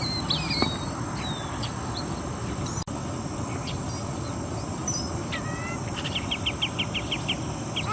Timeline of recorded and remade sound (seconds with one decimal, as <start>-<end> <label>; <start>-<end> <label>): 0.0-4.8 recorded; 4.8-6.4 remade; 6.4-7.9 recorded